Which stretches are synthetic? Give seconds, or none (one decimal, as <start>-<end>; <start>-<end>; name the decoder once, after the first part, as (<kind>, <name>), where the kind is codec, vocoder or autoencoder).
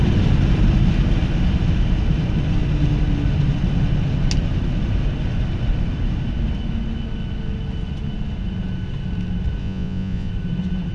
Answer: 9.6-10.3 (vocoder, Vocos)